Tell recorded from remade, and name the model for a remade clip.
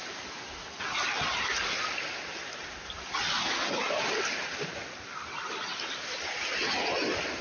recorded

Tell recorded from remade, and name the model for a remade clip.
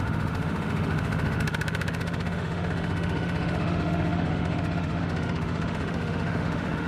remade, autoencoder, DAC-VAE